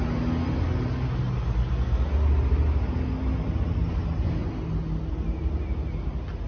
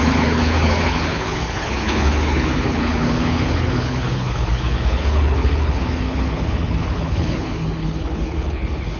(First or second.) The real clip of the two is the first